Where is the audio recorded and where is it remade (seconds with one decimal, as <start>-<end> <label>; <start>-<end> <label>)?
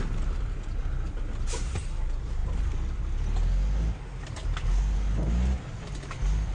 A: 0.0-6.5 recorded